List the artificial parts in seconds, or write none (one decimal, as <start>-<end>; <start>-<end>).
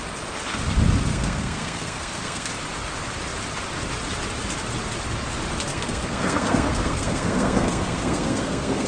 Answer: 1.1-2.5; 5.7-8.9